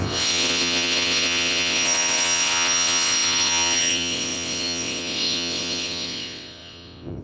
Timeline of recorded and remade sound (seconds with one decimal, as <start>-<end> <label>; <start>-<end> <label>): 0.0-7.2 remade